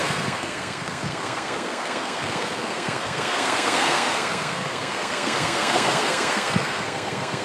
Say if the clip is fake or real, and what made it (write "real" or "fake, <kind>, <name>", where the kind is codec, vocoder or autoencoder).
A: fake, codec, SNAC